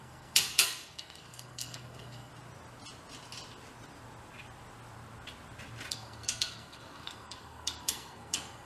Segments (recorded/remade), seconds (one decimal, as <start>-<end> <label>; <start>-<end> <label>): 0.0-2.3 remade; 2.3-5.9 recorded; 5.9-8.7 remade